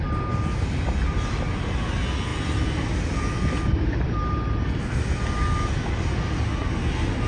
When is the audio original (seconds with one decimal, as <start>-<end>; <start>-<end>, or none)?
0.0-2.3; 4.1-7.3

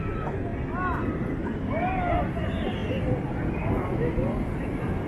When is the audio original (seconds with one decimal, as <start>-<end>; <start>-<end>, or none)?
0.0-5.1

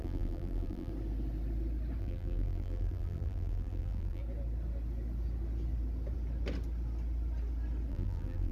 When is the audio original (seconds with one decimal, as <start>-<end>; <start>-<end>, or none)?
0.9-2.0; 4.2-7.9

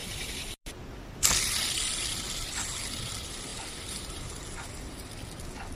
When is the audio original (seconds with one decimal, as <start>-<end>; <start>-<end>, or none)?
1.1-3.5; 4.4-5.7

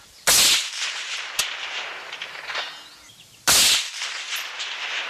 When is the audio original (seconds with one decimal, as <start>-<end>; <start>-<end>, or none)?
0.0-5.1